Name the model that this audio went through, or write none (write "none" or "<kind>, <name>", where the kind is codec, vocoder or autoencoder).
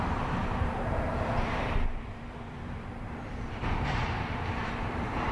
vocoder, BigVGAN v2